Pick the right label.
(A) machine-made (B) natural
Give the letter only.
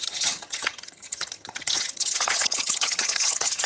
A